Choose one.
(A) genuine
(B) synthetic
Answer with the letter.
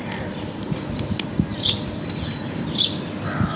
A